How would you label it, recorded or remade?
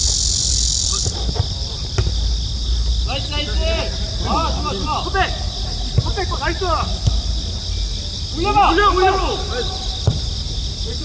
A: recorded